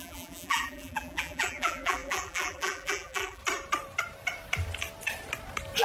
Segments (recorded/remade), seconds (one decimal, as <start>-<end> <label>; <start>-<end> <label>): 0.0-3.4 remade; 3.4-5.8 recorded